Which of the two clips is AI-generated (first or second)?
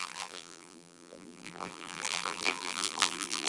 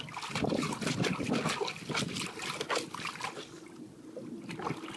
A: first